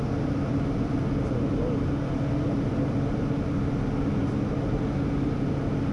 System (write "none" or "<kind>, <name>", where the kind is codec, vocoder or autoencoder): none